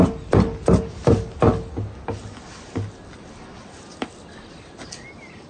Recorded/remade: recorded